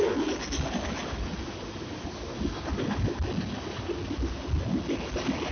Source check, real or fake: real